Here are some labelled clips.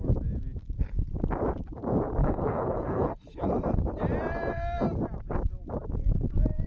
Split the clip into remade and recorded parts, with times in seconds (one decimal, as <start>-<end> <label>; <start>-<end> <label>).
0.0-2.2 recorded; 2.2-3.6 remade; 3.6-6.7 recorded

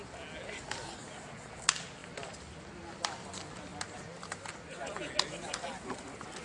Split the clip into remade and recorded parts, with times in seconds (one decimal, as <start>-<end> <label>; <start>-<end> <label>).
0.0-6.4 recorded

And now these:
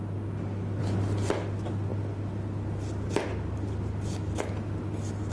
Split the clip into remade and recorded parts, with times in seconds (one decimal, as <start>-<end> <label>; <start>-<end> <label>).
0.0-5.3 recorded